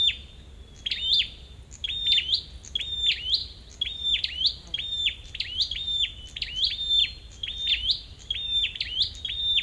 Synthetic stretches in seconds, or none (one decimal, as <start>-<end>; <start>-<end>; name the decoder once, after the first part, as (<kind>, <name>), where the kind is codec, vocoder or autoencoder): 1.8-2.4 (vocoder, BigVGAN v2); 3.4-6.0; 7.0-7.7